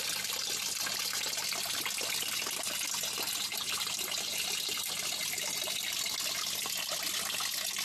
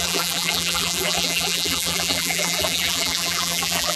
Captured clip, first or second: first